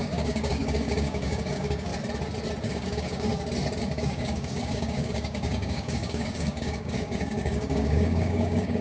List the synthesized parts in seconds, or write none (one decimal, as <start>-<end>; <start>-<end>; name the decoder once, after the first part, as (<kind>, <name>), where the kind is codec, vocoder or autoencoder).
0.0-1.9 (codec, DAC); 2.6-3.3; 3.8-8.8

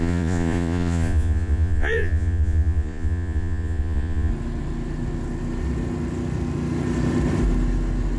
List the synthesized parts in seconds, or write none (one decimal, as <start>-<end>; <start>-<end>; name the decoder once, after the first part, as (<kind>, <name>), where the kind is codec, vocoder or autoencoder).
0.0-4.3 (vocoder, Vocos)

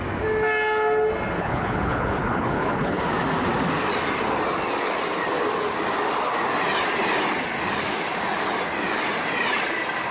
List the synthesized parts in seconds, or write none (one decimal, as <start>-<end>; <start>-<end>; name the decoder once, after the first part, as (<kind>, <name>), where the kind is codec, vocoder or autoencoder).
1.4-3.0 (codec, HILCodec)

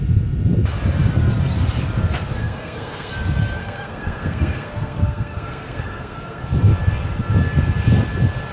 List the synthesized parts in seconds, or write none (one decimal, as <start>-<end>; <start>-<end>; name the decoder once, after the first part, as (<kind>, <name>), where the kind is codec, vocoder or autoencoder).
2.4-3.1 (codec, SNAC); 3.6-6.4

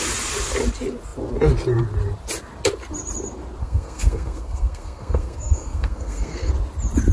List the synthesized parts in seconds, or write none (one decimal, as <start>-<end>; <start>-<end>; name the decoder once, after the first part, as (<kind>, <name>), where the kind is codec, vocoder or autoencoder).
3.6-6.5 (codec, SNAC)

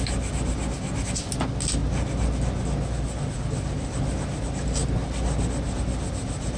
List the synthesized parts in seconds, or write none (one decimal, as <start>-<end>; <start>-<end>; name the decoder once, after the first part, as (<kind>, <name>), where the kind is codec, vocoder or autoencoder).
none

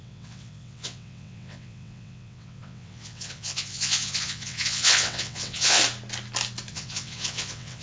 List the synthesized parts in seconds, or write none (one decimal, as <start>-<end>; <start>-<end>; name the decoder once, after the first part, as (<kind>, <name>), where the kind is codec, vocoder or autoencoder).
0.0-5.8 (vocoder, WaveNeXt); 6.7-7.8

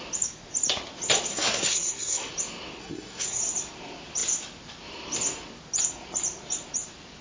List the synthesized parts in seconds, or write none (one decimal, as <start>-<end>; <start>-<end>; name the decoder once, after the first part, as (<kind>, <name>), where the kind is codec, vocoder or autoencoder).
1.3-2.3 (codec, SNAC); 2.8-3.4